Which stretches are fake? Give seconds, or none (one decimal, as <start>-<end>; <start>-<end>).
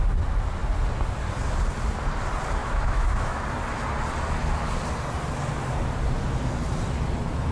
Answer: 2.6-3.4